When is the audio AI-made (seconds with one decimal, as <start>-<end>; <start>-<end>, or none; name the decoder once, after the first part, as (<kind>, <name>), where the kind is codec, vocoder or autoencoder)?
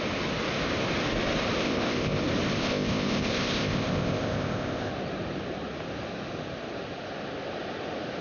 1.6-2.2 (codec, ZipCodec); 2.6-4.9